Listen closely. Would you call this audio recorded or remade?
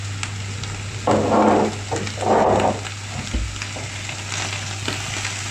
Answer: recorded